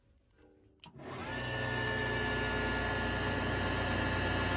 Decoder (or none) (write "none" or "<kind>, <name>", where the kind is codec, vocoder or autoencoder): none